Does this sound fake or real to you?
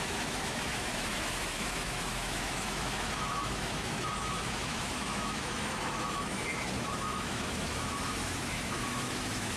fake